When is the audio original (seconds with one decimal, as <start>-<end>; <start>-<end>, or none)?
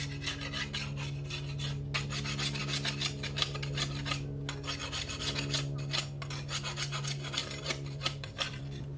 0.0-7.4; 8.6-9.0